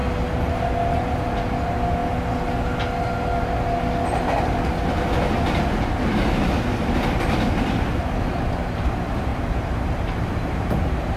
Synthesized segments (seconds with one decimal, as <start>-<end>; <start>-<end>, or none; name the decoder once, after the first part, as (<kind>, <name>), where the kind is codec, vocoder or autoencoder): 9.3-11.2 (vocoder, BigVGAN v2)